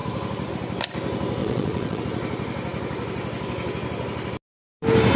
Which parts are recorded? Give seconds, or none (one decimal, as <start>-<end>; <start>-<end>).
0.0-1.4; 2.0-5.2